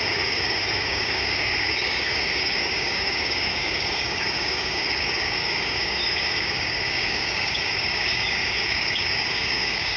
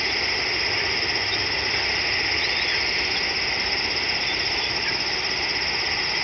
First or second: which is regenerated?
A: first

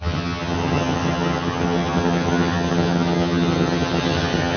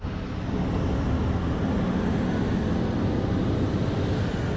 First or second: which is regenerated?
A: first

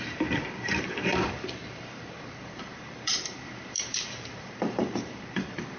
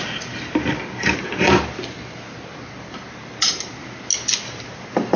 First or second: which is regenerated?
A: first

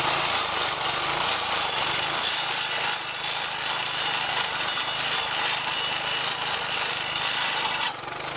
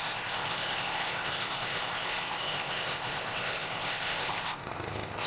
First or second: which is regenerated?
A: second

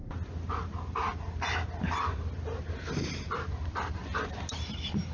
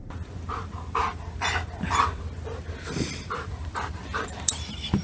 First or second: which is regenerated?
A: second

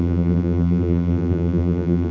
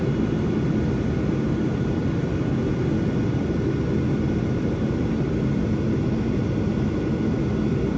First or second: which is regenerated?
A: first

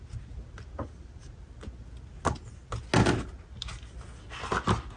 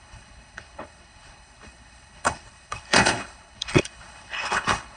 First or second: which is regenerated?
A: second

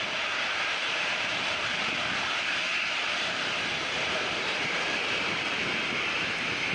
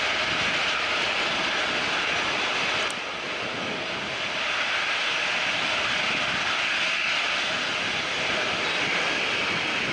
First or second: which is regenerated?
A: first